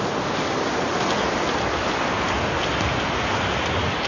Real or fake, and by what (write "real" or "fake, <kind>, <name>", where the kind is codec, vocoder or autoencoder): real